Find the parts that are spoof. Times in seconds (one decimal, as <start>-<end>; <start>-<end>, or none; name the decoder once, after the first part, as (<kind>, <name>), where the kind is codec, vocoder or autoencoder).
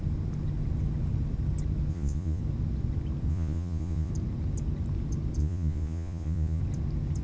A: 1.9-2.4 (vocoder, Vocos); 3.3-4.1; 5.4-6.6